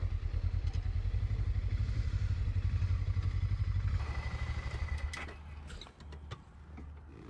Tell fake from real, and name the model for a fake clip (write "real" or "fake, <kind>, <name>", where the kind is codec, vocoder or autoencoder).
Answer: real